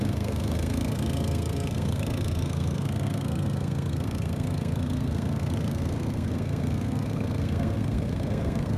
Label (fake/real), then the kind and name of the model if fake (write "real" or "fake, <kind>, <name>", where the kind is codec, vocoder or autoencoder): fake, codec, SNAC